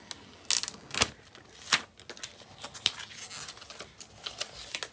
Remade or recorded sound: recorded